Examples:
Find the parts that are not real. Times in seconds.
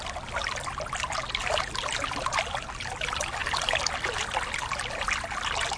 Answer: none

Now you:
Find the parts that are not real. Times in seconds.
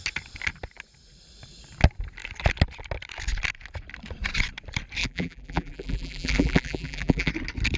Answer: 5.0-7.3 (vocoder, BigVGAN v2)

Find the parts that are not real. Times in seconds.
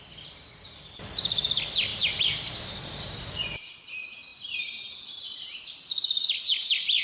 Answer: 1.9-3.7 (vocoder, BigVGAN v2); 4.3-4.9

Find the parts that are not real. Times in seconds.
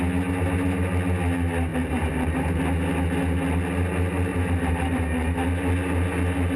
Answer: 1.7-2.6 (vocoder, BigVGAN v2); 4.3-5.0